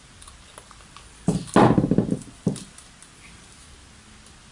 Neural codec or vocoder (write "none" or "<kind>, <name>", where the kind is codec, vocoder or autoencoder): none